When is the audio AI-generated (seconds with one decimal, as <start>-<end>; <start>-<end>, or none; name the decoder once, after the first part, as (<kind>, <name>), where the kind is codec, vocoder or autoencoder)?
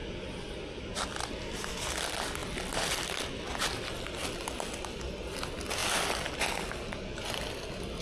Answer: 0.0-0.8 (vocoder, BigVGAN v2); 2.4-3.1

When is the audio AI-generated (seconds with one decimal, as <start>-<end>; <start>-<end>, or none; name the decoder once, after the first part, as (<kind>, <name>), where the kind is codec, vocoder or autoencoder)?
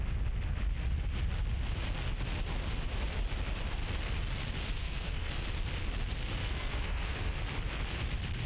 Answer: 4.8-5.3 (codec, SNAC); 6.4-7.4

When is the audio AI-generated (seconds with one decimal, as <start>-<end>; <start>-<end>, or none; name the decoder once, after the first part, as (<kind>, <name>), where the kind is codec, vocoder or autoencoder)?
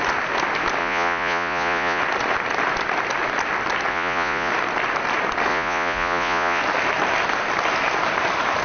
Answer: 0.8-2.0 (vocoder, Vocos); 3.9-4.5; 5.5-6.6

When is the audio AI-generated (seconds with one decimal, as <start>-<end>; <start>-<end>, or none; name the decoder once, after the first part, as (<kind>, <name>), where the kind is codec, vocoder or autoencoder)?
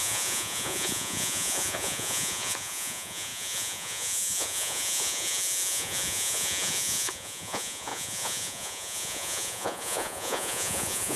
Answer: 0.0-11.2 (vocoder, Vocos)